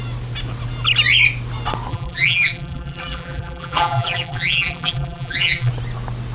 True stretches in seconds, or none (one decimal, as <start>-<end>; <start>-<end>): 0.0-1.9; 5.7-6.3